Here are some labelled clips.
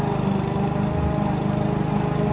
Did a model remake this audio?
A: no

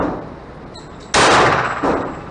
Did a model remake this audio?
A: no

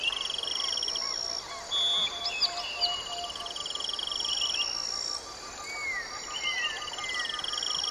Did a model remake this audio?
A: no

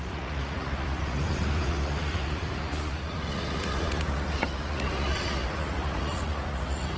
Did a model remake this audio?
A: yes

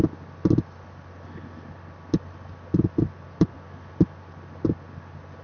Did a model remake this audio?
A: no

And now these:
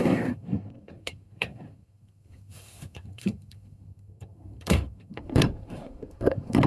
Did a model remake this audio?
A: yes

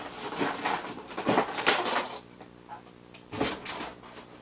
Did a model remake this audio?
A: no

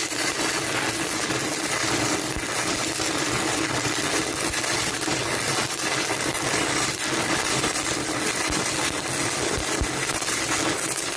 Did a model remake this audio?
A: no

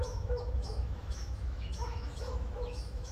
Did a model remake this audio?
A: yes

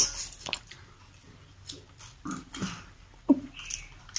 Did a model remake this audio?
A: no